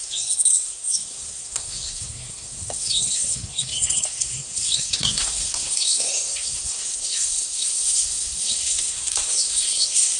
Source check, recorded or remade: remade